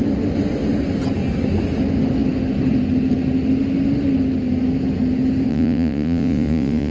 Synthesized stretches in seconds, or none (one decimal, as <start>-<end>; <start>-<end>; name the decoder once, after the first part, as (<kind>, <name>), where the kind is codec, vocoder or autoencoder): 5.5-6.9 (vocoder, Vocos)